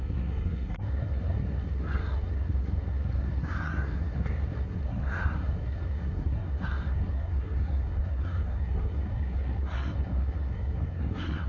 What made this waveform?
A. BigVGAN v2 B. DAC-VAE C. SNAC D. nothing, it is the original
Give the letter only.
C